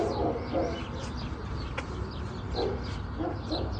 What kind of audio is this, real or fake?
real